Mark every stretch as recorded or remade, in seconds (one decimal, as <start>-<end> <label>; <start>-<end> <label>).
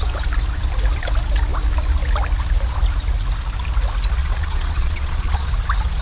0.0-4.2 recorded; 4.2-5.5 remade; 5.5-6.0 recorded